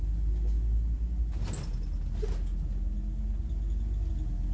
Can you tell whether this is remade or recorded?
recorded